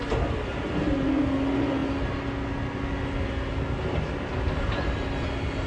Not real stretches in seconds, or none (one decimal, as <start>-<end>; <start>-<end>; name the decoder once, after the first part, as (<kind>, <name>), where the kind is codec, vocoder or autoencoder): none